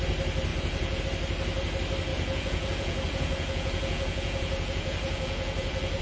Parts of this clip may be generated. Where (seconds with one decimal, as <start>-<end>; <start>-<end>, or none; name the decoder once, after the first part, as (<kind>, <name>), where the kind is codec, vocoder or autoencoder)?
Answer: 0.5-1.0 (vocoder, Vocos); 2.1-6.0